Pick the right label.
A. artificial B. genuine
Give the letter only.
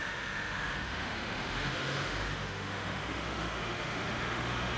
A